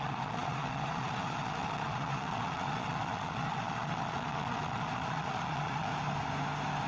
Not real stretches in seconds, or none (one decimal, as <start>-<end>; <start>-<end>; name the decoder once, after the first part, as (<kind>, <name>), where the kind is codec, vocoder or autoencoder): 0.0-5.9 (vocoder, Vocos)